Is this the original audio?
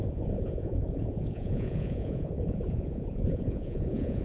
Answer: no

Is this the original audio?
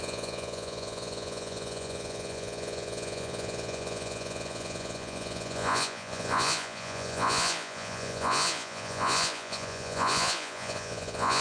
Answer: no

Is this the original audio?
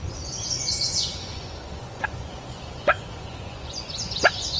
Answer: no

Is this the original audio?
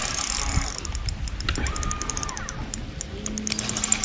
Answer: yes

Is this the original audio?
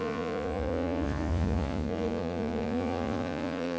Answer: no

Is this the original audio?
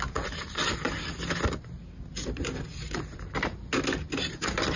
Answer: yes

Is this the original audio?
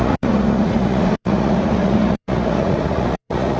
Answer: no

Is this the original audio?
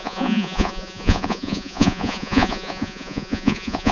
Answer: no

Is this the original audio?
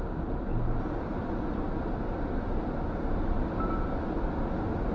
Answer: yes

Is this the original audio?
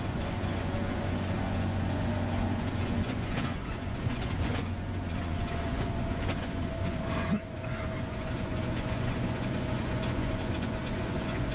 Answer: no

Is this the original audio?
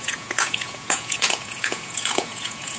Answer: no